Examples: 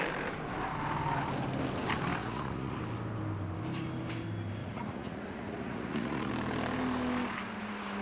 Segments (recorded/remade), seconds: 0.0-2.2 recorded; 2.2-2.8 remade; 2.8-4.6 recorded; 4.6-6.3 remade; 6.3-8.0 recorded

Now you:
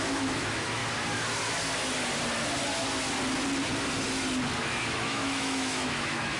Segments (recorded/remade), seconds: 0.0-0.8 remade; 0.8-4.6 recorded; 4.6-6.4 remade

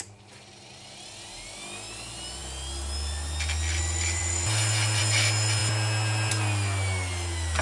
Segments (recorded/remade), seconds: 0.0-7.6 recorded

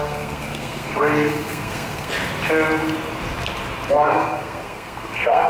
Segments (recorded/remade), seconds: 0.0-2.1 remade; 2.1-3.9 recorded; 3.9-5.5 remade

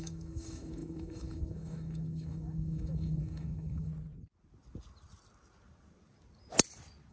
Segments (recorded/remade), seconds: 0.0-3.9 remade; 3.9-7.1 recorded

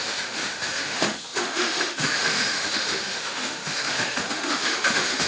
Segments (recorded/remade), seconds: 0.0-5.3 remade

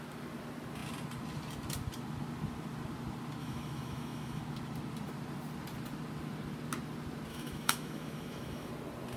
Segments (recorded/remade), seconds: 0.0-3.4 recorded; 3.4-4.4 remade; 4.4-7.3 recorded; 7.3-8.7 remade; 8.7-9.2 recorded